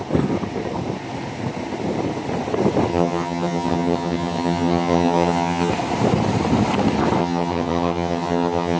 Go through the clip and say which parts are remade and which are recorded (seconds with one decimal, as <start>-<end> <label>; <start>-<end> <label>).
0.0-2.9 recorded; 2.9-5.7 remade; 5.7-7.2 recorded; 7.2-8.8 remade